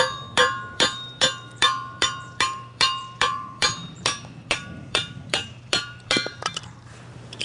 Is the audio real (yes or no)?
no